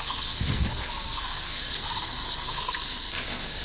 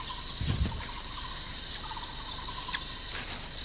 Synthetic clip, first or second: first